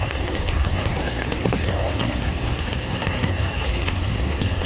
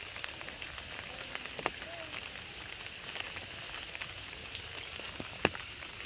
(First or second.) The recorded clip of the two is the second